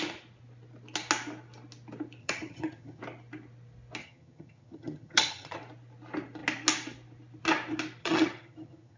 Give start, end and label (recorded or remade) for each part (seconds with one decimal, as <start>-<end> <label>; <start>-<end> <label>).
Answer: 0.0-2.2 recorded; 2.2-3.0 remade; 3.0-4.0 recorded; 4.0-5.6 remade; 5.6-8.0 recorded; 8.0-9.0 remade